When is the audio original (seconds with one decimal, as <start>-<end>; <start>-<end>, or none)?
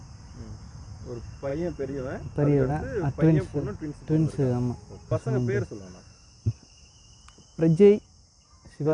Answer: 0.0-1.5; 2.7-8.9